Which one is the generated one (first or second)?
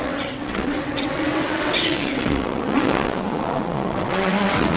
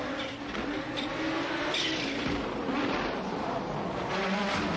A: first